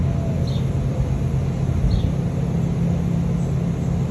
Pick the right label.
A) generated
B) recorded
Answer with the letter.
B